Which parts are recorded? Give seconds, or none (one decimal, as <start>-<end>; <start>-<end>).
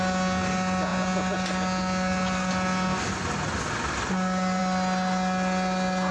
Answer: 0.0-6.1